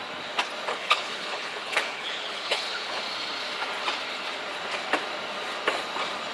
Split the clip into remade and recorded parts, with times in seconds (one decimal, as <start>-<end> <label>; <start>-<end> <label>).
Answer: 0.0-0.7 recorded; 0.7-3.0 remade; 3.0-6.3 recorded